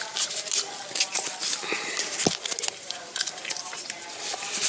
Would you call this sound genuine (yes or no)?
yes